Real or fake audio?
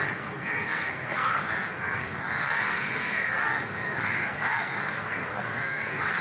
fake